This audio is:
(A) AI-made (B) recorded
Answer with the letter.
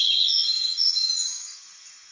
A